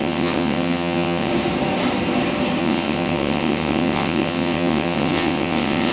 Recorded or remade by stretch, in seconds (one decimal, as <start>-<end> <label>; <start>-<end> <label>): 0.0-1.3 remade; 1.3-2.6 recorded; 2.6-5.9 remade